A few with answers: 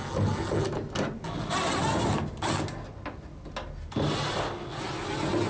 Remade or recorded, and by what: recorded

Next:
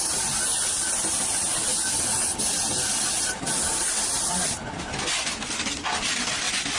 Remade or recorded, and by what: recorded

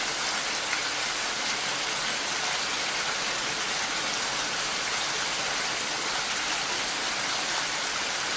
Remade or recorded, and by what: recorded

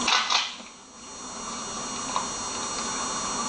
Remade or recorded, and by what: recorded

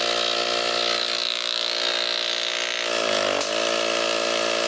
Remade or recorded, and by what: recorded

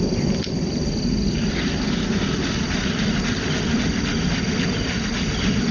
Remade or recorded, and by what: recorded